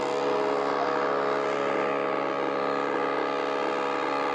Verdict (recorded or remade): recorded